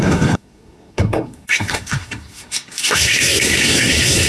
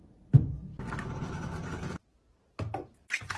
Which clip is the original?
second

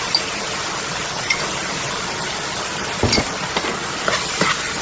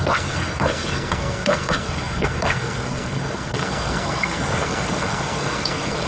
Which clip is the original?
first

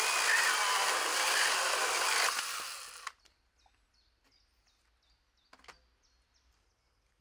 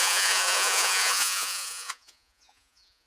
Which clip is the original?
first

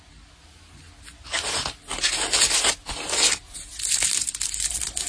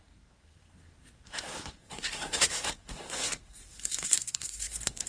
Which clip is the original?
first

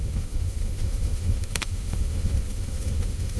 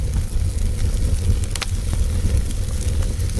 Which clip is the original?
second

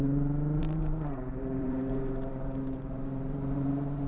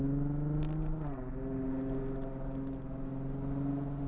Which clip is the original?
second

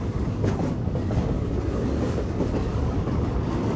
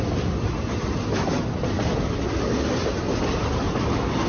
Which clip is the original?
second